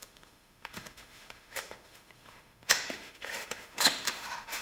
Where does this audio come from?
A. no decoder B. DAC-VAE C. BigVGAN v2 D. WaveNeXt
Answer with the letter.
B